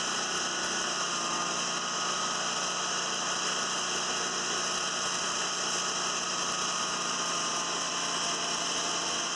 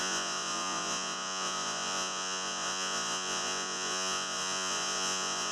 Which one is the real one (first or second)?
first